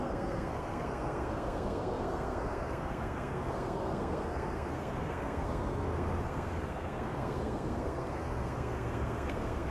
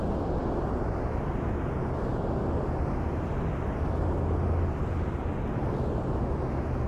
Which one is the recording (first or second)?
second